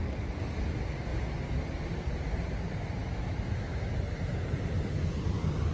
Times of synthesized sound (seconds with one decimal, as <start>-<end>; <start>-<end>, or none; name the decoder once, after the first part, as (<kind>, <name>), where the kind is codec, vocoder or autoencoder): 3.0-3.9 (autoencoder, DAC-VAE)